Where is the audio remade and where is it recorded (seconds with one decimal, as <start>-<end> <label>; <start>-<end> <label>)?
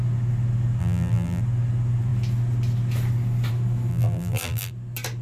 0.0-0.8 recorded; 0.8-1.4 remade; 1.4-3.9 recorded; 3.9-4.7 remade; 4.7-5.2 recorded